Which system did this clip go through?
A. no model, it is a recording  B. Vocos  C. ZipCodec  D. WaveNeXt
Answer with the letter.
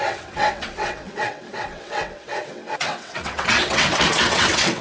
D